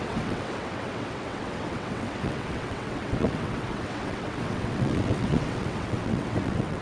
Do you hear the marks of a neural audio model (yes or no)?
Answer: yes